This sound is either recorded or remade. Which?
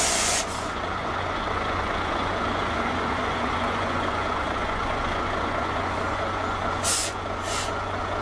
remade